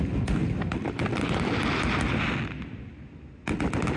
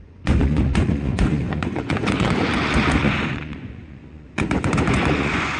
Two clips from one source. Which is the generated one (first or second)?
second